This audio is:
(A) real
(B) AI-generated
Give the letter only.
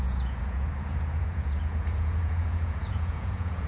B